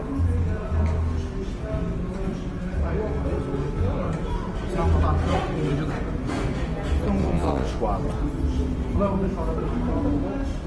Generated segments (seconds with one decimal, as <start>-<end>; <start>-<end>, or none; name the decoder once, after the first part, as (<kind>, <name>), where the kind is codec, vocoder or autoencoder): 7.2-7.8 (vocoder, WaveNeXt)